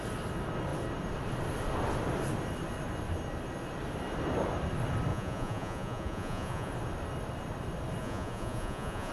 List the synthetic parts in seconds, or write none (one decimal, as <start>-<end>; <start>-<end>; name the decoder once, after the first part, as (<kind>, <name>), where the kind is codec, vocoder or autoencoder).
5.1-6.7 (vocoder, Vocos); 8.0-9.1